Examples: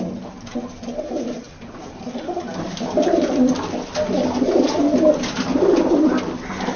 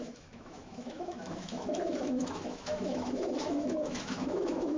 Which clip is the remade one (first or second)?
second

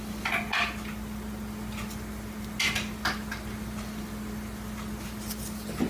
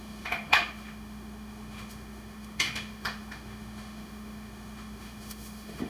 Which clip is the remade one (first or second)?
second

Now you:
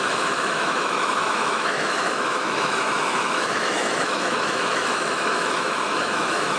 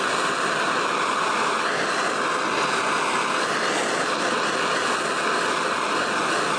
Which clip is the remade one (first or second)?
first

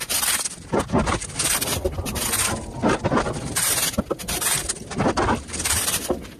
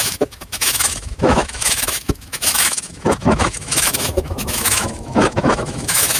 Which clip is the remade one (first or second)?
second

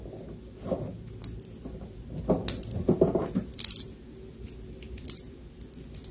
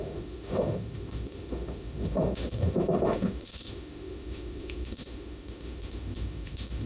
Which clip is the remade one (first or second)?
second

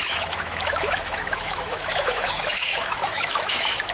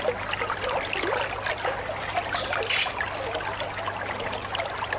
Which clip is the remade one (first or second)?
first